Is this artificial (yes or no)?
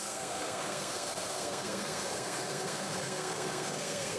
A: yes